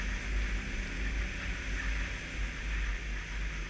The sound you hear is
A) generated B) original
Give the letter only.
B